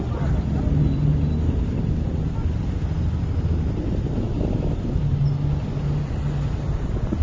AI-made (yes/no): no